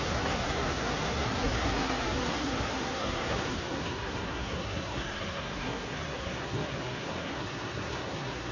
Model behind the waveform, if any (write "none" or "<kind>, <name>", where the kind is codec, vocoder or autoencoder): codec, SNAC